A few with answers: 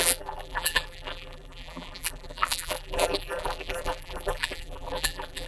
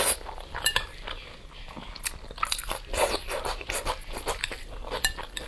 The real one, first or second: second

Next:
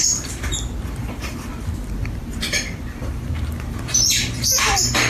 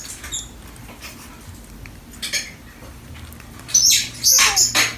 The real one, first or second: second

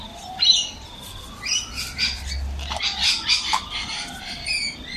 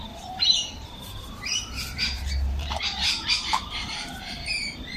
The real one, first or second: first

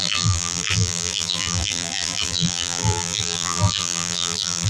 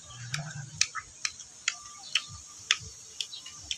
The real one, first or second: second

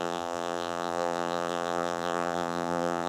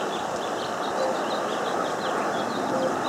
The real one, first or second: second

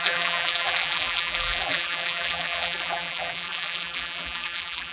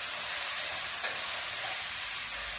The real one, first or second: second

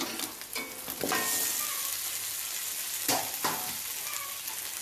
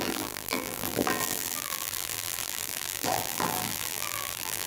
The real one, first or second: first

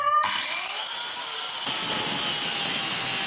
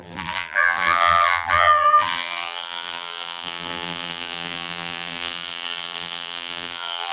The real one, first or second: first